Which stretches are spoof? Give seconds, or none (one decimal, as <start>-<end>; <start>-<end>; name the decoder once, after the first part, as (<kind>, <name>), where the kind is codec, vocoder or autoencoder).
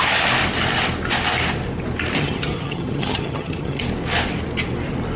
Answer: 2.2-3.8 (vocoder, HiFi-GAN)